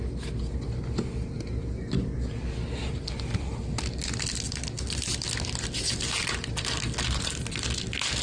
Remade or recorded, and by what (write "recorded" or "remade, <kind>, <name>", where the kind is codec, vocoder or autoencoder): recorded